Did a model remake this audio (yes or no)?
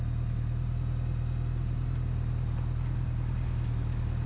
no